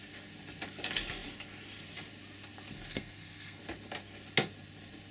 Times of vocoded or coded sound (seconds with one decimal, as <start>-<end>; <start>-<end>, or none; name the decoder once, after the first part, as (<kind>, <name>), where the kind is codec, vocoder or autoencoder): 2.9-3.6 (codec, SNAC)